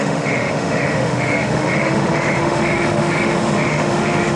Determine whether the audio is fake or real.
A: fake